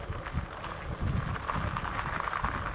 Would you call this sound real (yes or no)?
yes